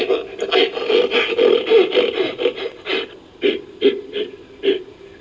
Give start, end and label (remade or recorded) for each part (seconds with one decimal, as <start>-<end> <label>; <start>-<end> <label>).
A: 0.0-5.2 recorded